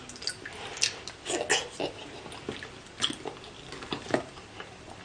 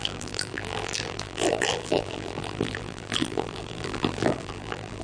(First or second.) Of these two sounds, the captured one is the first